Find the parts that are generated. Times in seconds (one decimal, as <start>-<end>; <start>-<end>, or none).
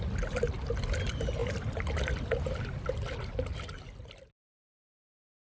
none